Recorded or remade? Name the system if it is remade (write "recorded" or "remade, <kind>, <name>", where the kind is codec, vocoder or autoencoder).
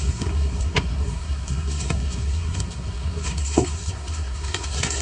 remade, codec, SNAC